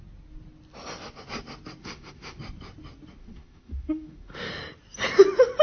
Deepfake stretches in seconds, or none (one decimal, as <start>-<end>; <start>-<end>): 1.8-2.4; 3.2-4.5

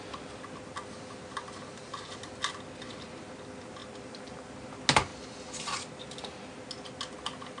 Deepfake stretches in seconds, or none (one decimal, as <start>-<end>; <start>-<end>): none

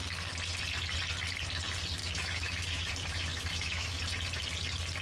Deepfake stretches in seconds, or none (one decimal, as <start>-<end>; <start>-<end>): 2.0-2.9; 3.3-4.0

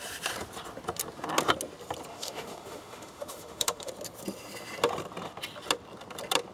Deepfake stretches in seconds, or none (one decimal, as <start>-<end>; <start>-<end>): 2.1-3.9

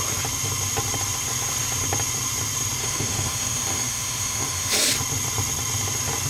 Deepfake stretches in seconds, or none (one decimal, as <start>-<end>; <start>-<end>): 2.8-4.7